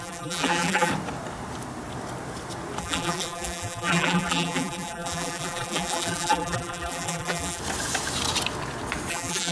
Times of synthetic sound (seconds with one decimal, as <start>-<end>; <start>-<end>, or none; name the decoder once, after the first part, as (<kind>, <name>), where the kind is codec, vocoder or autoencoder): 0.0-0.9 (vocoder, BigVGAN v2); 2.8-7.6; 9.1-9.5